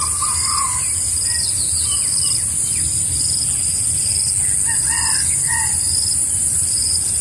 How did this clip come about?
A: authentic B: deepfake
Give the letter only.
A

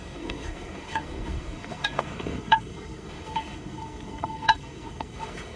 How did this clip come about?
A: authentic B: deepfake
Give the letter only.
B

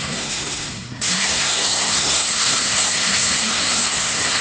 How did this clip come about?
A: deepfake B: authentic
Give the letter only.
A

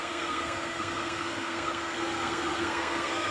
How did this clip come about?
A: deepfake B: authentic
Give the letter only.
A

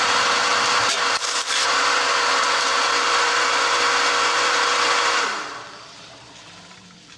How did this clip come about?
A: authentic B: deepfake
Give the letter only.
B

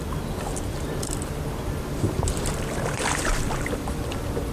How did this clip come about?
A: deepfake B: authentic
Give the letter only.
A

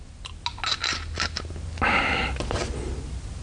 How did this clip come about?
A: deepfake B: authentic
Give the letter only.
B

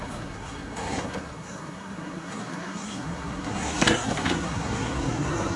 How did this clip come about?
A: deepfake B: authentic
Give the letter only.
A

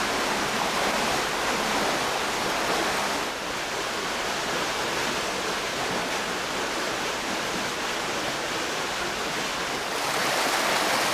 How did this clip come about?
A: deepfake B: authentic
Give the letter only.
B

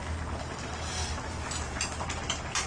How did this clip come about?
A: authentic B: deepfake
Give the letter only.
A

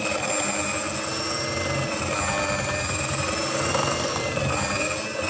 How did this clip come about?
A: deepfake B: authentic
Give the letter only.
B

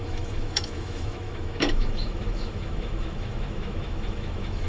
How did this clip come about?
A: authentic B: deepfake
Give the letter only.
B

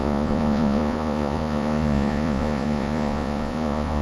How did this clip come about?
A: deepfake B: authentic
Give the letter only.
A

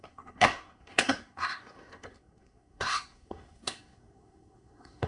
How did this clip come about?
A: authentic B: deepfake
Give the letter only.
B